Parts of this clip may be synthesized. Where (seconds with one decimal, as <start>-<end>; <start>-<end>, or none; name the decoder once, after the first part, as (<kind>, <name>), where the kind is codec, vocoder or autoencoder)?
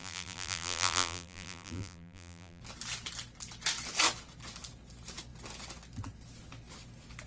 0.0-2.6 (vocoder, BigVGAN v2)